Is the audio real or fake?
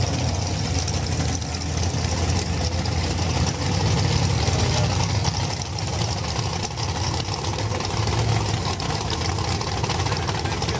real